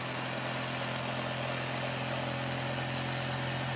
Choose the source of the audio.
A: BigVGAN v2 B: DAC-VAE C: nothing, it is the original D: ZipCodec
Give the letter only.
C